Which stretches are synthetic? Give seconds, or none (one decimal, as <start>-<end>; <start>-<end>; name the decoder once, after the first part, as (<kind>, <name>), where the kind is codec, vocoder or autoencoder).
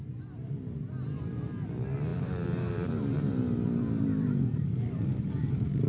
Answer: 2.1-4.8 (vocoder, BigVGAN v2)